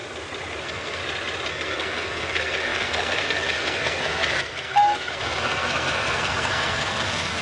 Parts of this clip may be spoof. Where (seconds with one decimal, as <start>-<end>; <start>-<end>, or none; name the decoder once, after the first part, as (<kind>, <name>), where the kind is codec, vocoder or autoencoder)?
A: 0.6-1.0 (codec, SNAC); 1.5-7.4